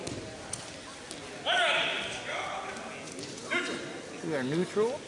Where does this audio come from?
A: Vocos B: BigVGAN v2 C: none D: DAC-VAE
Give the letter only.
C